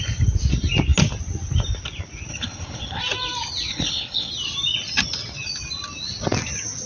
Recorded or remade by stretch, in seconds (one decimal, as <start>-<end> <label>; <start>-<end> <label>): 0.0-2.3 recorded; 2.3-3.0 remade; 3.0-3.7 recorded; 3.7-4.3 remade; 4.3-6.9 recorded